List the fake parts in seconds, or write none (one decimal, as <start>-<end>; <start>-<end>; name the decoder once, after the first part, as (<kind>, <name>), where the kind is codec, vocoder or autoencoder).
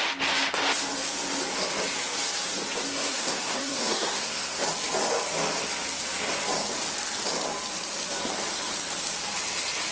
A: 2.9-4.6 (codec, SNAC)